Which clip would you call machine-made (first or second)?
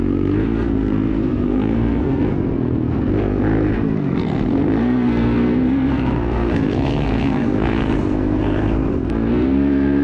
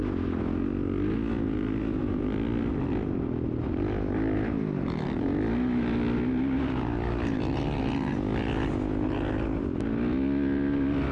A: first